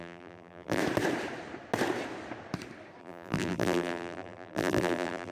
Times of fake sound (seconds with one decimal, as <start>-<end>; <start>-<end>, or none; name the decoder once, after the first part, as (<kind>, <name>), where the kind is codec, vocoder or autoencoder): 0.0-0.8 (vocoder, BigVGAN v2); 3.0-5.3